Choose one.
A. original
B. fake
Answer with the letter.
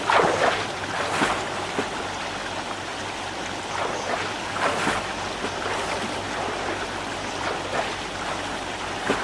A